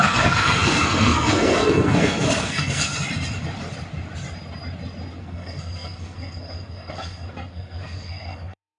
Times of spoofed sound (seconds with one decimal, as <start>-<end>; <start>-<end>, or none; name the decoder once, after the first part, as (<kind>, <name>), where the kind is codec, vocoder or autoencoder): 0.0-2.9 (codec, SNAC); 5.2-8.8